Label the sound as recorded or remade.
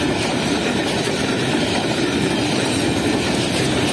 recorded